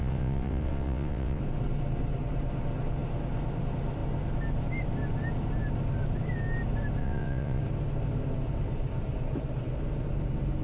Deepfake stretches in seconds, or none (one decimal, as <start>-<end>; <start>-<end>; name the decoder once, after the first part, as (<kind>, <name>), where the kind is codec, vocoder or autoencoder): 0.0-1.4 (vocoder, WaveNeXt); 7.0-7.6